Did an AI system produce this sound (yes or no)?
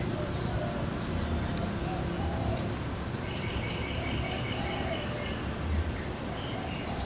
no